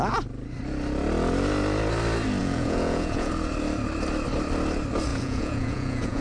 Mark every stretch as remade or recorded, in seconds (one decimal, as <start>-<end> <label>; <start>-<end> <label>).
0.0-2.4 recorded; 2.4-3.3 remade; 3.3-5.1 recorded; 5.1-6.2 remade